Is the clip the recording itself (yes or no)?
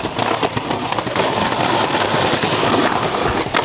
yes